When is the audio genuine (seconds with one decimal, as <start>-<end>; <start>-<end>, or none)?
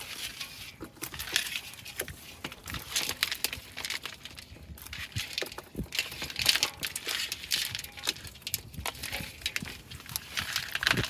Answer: 0.0-11.1